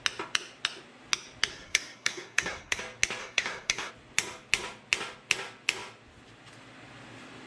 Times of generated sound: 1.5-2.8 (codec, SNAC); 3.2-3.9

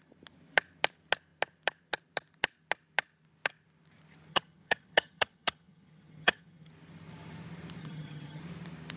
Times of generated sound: 4.3-6.7 (vocoder, HiFi-GAN); 7.8-8.4

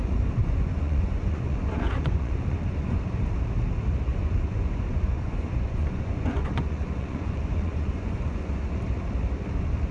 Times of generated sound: 0.4-3.0 (vocoder, Vocos); 4.1-8.7

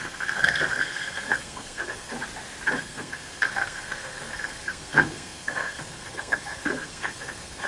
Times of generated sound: 0.0-2.1 (codec, SNAC); 2.8-7.7

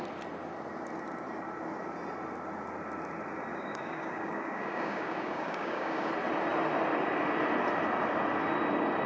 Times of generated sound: 3.5-6.1 (codec, DAC)

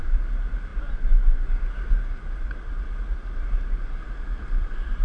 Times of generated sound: none

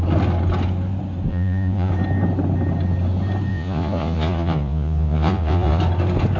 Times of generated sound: 1.3-1.9 (vocoder, Vocos); 3.5-5.8